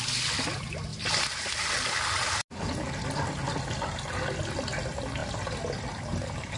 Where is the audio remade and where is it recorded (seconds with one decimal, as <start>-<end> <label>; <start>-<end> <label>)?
0.0-0.9 recorded; 0.9-2.3 remade; 2.3-6.6 recorded

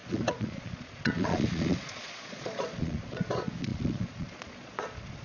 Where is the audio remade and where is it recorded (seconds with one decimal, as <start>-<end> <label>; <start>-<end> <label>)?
0.0-5.2 remade

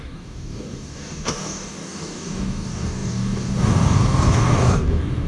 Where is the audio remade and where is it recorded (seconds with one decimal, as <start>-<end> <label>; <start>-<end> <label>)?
0.0-5.3 remade

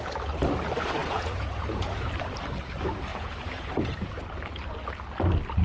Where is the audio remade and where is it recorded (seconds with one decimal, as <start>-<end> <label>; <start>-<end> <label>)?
0.0-1.0 recorded; 1.0-2.1 remade; 2.1-3.1 recorded; 3.1-4.1 remade; 4.1-5.6 recorded

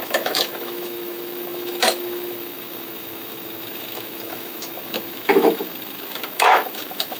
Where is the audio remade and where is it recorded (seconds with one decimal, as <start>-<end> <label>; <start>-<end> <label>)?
0.0-7.2 remade

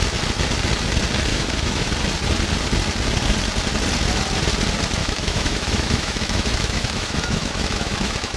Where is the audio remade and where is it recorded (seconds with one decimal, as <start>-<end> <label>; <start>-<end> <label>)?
0.0-1.3 recorded; 1.3-1.9 remade; 1.9-5.0 recorded; 5.0-8.4 remade

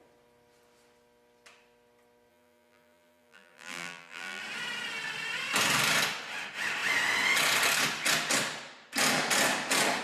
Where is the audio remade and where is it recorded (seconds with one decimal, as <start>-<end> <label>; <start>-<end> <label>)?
0.0-2.3 recorded; 2.3-4.4 remade; 4.4-10.0 recorded

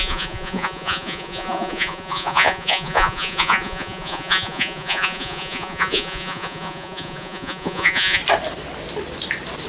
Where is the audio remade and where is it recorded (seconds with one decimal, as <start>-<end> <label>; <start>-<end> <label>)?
0.0-8.2 remade; 8.2-9.7 recorded